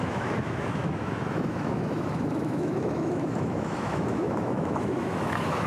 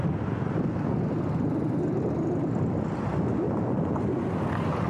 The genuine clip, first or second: second